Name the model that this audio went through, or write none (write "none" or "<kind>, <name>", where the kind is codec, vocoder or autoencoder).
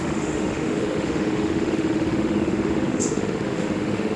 autoencoder, DAC-VAE